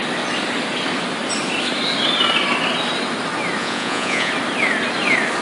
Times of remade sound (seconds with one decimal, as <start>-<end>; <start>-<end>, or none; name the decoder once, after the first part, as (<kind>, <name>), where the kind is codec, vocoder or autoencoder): 3.6-4.3 (vocoder, Vocos)